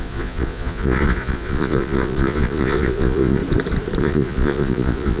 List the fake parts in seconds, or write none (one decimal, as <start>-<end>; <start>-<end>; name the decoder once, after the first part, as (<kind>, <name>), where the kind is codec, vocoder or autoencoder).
0.0-3.4 (vocoder, Vocos); 4.0-5.2